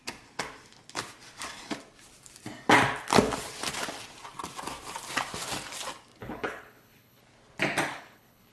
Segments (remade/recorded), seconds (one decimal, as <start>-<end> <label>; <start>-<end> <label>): 0.0-6.2 recorded; 6.2-7.2 remade; 7.2-7.9 recorded; 7.9-8.5 remade